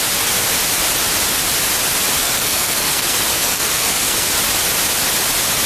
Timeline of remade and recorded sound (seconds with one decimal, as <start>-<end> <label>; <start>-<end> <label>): 0.0-2.2 recorded; 2.2-4.3 remade; 4.3-5.7 recorded